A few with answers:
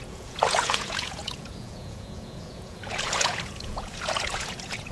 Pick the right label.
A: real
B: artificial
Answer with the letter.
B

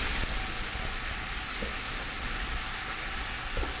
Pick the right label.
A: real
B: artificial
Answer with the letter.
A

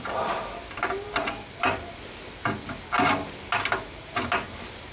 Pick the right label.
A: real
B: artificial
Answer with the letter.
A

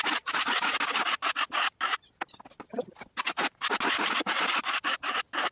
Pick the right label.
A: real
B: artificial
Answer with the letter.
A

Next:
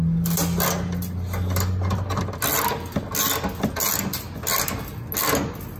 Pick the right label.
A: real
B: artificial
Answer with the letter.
A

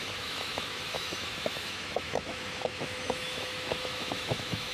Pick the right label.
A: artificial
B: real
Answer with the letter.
A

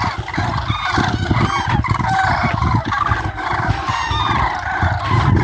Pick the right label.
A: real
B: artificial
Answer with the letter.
A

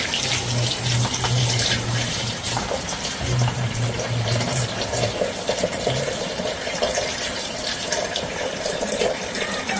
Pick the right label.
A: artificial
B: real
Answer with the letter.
A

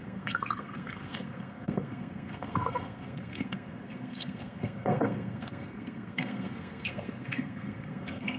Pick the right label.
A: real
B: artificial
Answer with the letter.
B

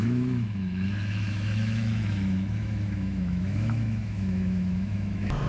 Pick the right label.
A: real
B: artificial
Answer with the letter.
B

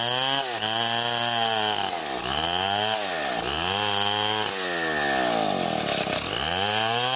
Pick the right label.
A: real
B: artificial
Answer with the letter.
A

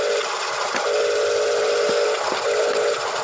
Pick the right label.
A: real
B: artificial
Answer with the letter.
A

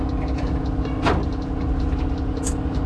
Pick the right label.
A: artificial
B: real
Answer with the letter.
B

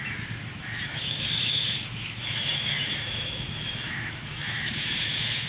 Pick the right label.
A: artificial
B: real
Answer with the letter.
A